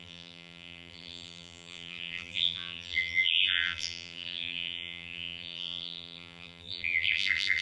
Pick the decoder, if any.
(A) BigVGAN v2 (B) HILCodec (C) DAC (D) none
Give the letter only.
A